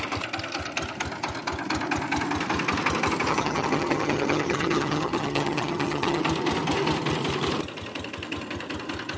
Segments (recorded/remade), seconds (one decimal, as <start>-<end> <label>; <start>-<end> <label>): 0.0-3.3 recorded; 3.3-6.2 remade; 6.2-9.2 recorded